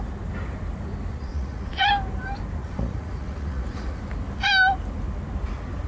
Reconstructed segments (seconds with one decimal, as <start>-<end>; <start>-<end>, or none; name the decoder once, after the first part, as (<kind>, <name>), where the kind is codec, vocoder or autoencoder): 1.1-1.9 (vocoder, Vocos); 2.6-4.0